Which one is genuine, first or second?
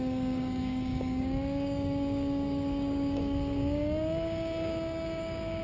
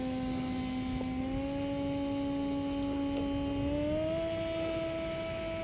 second